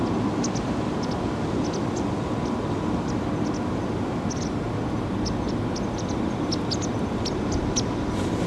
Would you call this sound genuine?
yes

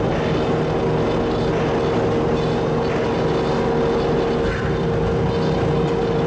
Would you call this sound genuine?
yes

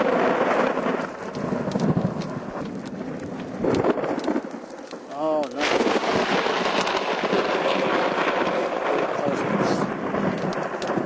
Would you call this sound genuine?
yes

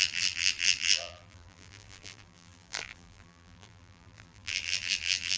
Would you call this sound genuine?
no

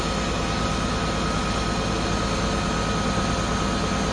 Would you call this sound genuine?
yes